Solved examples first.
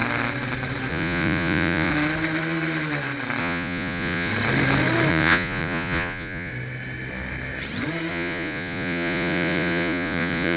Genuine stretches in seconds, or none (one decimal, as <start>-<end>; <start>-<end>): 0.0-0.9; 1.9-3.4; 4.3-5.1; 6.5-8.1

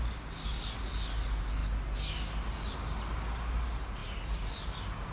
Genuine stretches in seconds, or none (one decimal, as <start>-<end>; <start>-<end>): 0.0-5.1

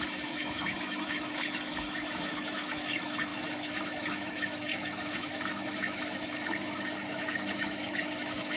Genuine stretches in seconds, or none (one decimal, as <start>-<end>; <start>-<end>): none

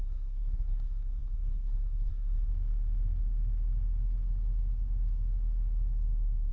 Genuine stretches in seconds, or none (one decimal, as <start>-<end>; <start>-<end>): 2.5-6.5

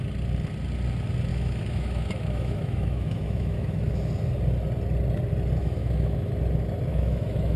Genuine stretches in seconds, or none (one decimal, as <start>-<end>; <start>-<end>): 0.0-1.3; 3.9-5.6; 6.3-6.9